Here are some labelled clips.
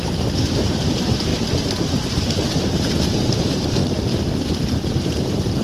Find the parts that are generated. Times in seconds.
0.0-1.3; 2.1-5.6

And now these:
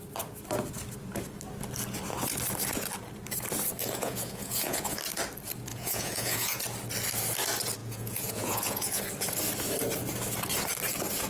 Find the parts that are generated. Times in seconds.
3.8-5.0; 5.7-6.6; 7.8-9.0

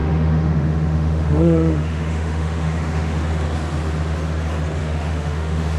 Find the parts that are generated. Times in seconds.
0.0-3.2; 4.8-5.8

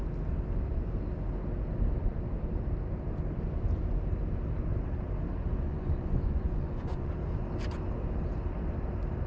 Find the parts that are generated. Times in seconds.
5.4-7.1

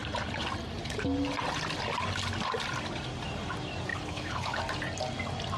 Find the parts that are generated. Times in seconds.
3.9-4.6